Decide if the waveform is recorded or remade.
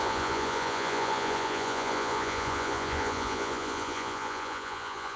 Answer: remade